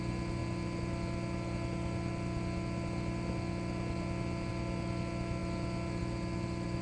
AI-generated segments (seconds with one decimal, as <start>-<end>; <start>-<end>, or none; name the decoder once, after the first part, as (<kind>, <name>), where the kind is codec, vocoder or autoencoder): none